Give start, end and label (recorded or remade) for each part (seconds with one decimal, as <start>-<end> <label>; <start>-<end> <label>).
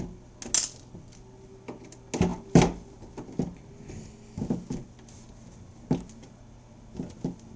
0.0-7.6 recorded